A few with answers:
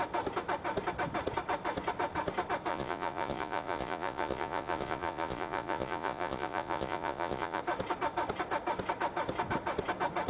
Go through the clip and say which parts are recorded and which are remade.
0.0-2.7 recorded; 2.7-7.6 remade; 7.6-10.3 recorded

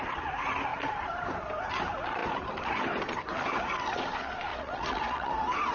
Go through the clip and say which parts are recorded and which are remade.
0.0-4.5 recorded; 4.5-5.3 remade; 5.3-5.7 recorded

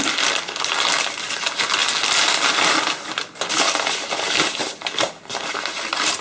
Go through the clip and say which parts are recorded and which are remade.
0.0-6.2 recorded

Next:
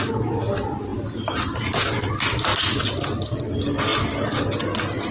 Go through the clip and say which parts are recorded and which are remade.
0.0-5.1 recorded